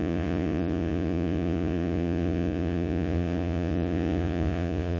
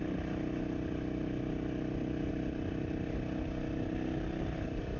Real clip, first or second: second